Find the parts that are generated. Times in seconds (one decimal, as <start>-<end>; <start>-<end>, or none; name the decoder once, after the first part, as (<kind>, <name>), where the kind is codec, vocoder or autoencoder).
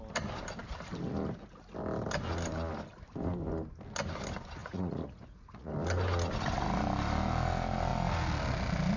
4.6-5.7 (vocoder, Vocos)